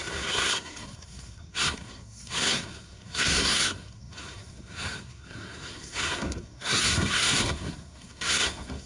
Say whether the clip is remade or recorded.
remade